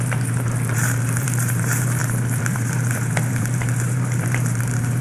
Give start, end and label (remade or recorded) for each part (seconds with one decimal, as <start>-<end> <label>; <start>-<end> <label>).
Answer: 0.0-5.0 remade